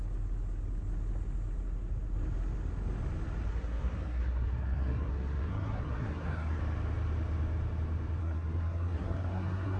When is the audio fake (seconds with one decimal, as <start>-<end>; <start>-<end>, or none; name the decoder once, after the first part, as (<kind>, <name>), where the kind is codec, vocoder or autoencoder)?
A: 3.5-6.6 (codec, SNAC); 8.2-9.8